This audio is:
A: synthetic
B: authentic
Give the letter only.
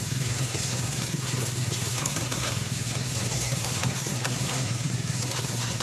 A